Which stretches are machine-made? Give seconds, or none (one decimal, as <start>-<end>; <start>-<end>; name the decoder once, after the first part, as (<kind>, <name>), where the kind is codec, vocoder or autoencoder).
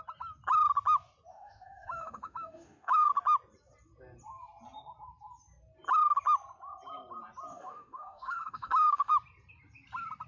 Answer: 1.3-3.1 (autoencoder, DAC-VAE); 7.5-9.1